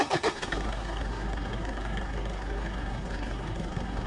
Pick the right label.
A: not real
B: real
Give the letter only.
A